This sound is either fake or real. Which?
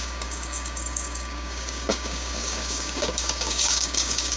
fake